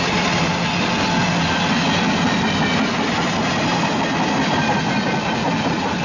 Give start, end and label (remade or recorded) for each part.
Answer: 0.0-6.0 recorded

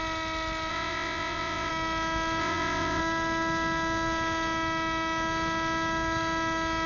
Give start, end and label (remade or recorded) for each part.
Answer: 0.0-0.7 recorded; 0.7-1.7 remade; 1.7-2.4 recorded; 2.4-3.0 remade; 3.0-6.9 recorded

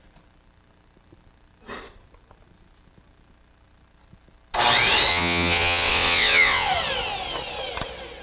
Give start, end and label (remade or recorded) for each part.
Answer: 0.0-5.1 recorded; 5.1-6.7 remade; 6.7-8.2 recorded